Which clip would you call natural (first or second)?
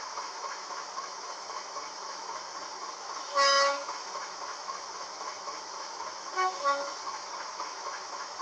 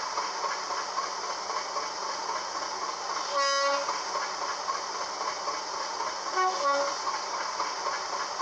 second